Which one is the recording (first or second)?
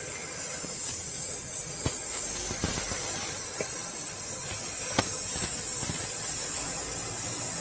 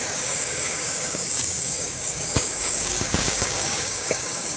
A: first